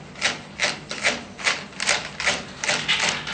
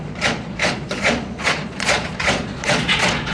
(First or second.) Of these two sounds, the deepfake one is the second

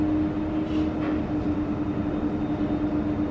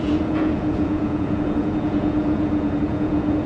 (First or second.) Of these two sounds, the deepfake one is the second